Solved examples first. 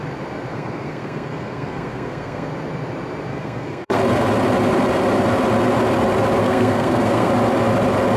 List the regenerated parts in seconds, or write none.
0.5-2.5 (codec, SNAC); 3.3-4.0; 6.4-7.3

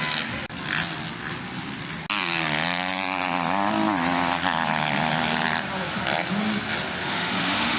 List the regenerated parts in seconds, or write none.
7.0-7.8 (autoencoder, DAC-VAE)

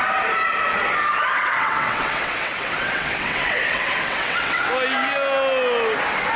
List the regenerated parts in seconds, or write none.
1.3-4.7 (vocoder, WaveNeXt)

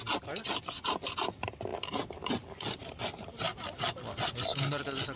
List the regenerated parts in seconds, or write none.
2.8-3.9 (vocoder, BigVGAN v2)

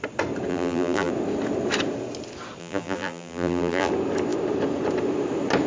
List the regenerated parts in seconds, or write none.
0.5-1.1 (vocoder, BigVGAN v2); 2.6-3.9

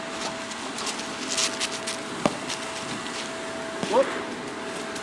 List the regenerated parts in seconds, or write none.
none

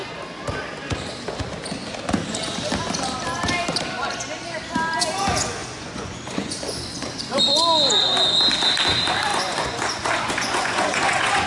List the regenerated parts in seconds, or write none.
5.6-7.4 (vocoder, Vocos); 9.3-11.5

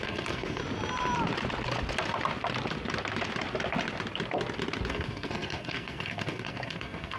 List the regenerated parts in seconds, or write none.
0.0-0.6 (codec, SNAC); 4.9-7.2